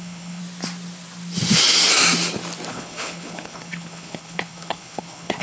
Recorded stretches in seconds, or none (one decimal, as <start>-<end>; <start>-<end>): 0.4-2.7